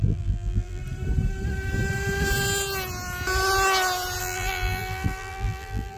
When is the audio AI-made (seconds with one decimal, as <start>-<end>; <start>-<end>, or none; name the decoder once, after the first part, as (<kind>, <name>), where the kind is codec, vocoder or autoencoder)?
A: 0.0-0.8 (vocoder, BigVGAN v2); 4.2-6.0